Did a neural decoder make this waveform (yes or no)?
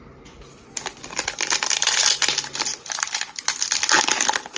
no